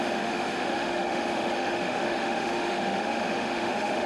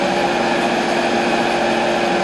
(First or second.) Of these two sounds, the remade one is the first